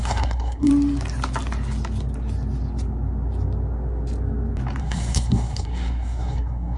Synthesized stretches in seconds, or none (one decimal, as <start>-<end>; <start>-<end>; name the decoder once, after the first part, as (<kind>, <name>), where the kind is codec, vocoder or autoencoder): 0.0-0.7 (codec, SNAC); 4.8-6.8